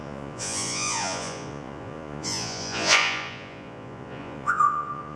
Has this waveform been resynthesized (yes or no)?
yes